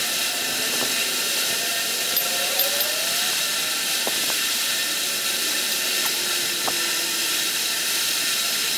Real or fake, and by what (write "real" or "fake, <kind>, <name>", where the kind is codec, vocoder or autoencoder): fake, vocoder, BigVGAN v2